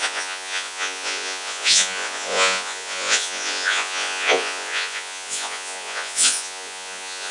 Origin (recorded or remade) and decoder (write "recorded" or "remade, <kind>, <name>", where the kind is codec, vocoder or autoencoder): remade, vocoder, Vocos